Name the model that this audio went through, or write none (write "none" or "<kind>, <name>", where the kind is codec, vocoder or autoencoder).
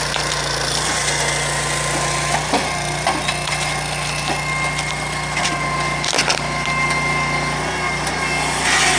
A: none